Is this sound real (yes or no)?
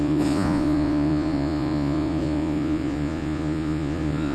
no